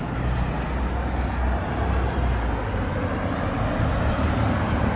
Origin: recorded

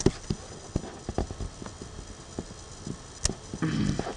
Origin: recorded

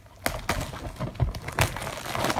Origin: recorded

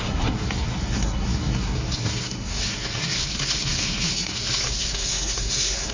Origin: remade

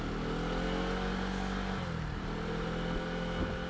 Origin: recorded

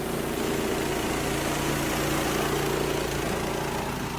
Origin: recorded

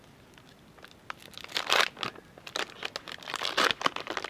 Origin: recorded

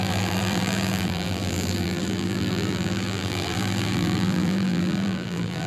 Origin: remade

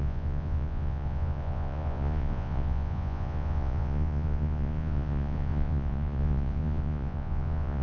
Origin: remade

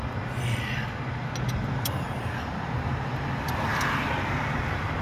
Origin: recorded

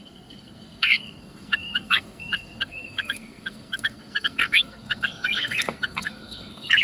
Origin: remade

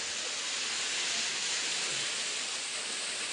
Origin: recorded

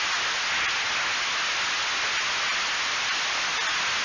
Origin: recorded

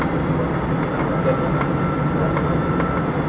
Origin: recorded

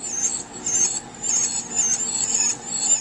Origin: recorded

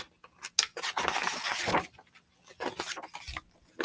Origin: recorded